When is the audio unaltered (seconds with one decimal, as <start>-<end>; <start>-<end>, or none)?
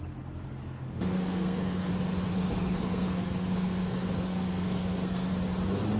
0.0-0.6; 1.9-2.3; 5.3-6.0